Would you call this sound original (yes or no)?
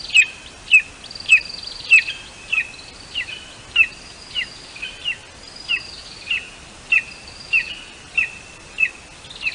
yes